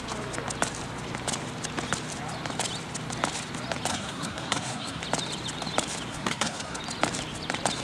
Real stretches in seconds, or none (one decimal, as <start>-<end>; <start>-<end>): 0.0-3.9; 5.0-6.1; 6.8-7.8